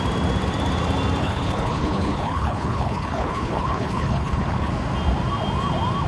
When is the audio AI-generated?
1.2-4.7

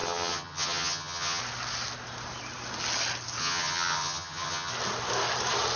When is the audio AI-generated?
0.0-1.4; 3.4-4.7

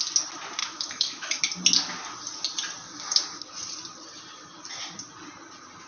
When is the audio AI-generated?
0.6-1.4

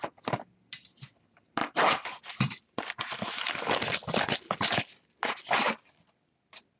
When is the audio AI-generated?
none

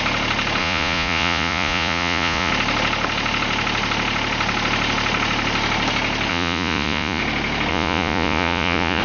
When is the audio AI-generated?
0.6-2.5; 6.3-7.2; 7.7-9.0